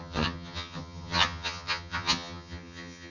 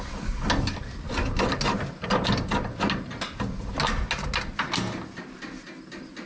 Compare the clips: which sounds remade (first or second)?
first